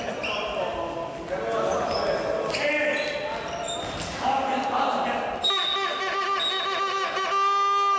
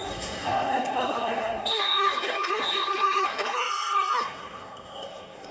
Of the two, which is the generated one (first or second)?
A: second